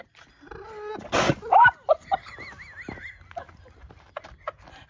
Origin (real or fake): real